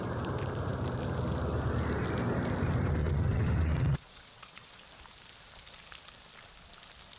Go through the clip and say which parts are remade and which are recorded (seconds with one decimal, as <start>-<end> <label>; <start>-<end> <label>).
0.0-3.0 recorded; 3.0-4.8 remade; 4.8-7.2 recorded